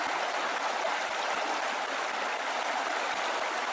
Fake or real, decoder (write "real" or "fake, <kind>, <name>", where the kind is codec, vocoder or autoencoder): real